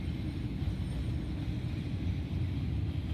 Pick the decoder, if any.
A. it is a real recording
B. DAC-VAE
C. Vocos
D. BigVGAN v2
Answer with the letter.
A